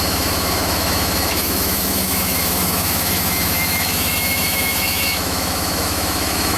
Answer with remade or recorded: remade